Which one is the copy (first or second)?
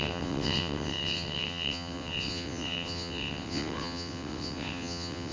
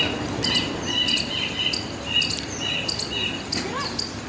first